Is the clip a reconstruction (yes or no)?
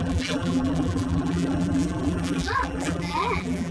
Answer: yes